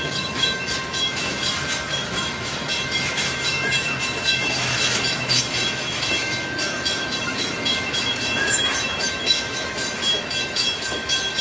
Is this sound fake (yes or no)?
yes